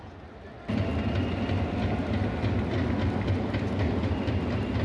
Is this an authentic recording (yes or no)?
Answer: yes